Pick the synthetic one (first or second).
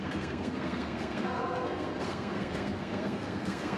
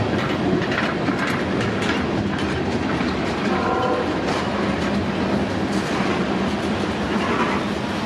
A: first